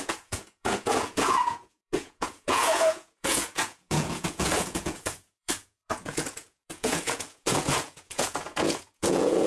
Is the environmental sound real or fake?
fake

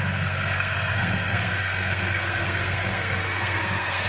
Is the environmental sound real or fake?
fake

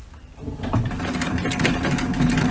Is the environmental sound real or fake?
real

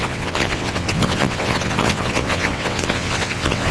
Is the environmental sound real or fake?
fake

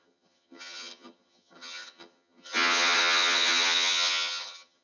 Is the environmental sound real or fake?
fake